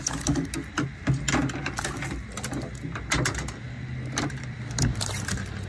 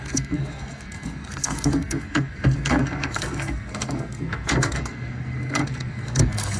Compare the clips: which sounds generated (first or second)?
second